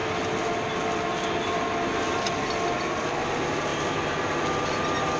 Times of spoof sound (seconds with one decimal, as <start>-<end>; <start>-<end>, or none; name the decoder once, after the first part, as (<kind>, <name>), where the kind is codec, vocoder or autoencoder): none